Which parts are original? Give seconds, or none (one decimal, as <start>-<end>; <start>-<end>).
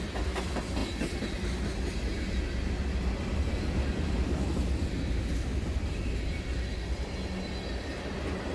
0.0-8.5